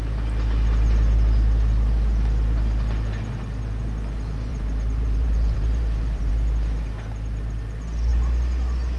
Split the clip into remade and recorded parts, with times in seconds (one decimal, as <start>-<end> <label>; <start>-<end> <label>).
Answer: 0.0-4.5 recorded; 4.5-6.3 remade; 6.3-9.0 recorded